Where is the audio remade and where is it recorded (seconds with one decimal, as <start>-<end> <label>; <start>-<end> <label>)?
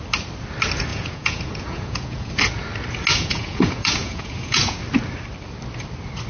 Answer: 0.0-0.9 recorded; 0.9-2.3 remade; 2.3-3.1 recorded; 3.1-4.8 remade; 4.8-6.3 recorded